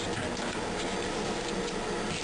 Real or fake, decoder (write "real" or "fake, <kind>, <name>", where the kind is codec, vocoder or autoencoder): real